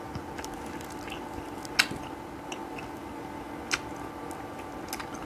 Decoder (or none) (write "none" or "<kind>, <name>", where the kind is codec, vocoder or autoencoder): none